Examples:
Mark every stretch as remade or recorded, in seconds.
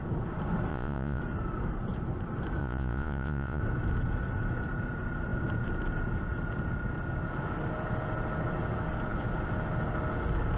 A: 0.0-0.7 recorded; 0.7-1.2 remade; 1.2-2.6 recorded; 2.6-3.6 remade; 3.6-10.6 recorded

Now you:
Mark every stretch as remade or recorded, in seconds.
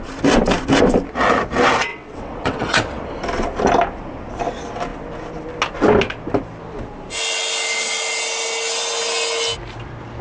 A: 0.0-1.9 recorded; 1.9-3.0 remade; 3.0-10.2 recorded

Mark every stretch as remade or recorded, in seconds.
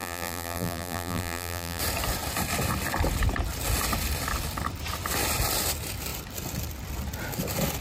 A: 0.0-1.8 remade; 1.8-7.8 recorded